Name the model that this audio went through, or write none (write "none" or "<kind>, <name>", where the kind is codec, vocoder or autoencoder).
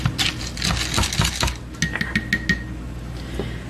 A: none